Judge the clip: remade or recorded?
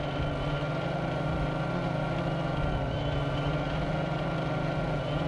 recorded